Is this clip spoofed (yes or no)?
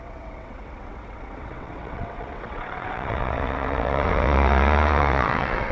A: yes